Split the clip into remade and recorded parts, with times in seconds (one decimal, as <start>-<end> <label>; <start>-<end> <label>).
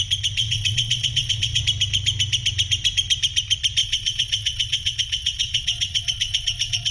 0.0-0.4 recorded; 0.4-1.6 remade; 1.6-3.8 recorded; 3.8-6.9 remade